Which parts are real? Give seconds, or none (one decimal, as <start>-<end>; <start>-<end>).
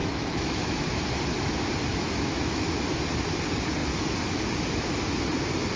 0.9-1.9; 2.8-5.8